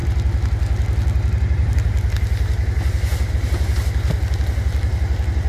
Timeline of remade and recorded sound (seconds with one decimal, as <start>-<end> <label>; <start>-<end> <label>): 0.0-5.5 recorded